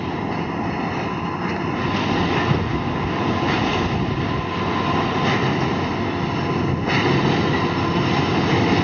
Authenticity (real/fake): real